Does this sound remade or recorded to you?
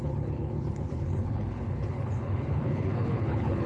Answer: remade